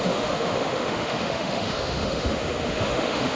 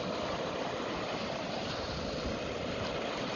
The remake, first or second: first